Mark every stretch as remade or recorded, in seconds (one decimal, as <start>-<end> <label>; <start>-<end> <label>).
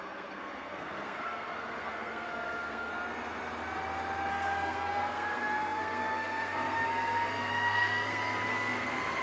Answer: 0.0-2.9 remade; 2.9-4.3 recorded; 4.3-9.2 remade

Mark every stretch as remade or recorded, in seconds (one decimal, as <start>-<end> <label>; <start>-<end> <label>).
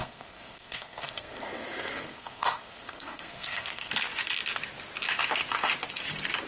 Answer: 0.0-3.9 remade; 3.9-6.5 recorded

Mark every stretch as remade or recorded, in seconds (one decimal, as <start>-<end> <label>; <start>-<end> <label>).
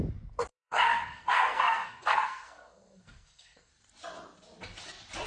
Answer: 0.0-0.5 recorded; 0.5-3.7 remade; 3.7-5.3 recorded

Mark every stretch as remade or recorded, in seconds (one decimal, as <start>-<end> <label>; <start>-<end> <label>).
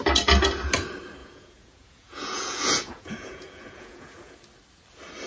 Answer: 0.0-1.2 recorded; 1.2-4.4 remade; 4.4-5.3 recorded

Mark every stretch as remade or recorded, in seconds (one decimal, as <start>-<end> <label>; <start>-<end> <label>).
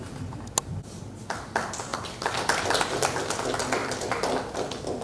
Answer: 0.0-5.0 recorded